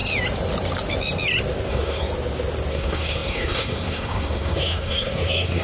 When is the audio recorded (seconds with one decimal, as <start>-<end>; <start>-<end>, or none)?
0.0-1.7; 2.1-2.7